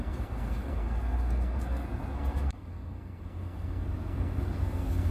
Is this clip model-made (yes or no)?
yes